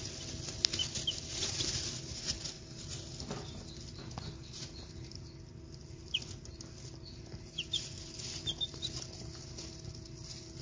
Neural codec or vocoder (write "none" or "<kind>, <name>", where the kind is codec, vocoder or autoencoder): none